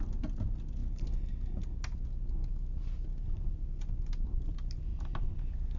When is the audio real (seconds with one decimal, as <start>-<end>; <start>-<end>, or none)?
0.8-4.3